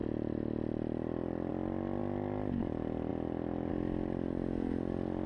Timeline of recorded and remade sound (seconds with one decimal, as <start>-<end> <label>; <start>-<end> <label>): 0.0-5.3 recorded